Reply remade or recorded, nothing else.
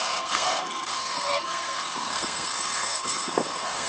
remade